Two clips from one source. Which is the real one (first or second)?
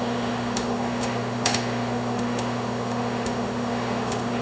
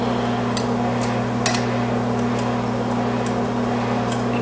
second